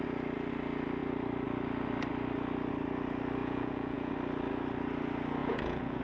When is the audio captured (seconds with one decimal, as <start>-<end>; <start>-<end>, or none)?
0.0-3.4; 4.1-5.4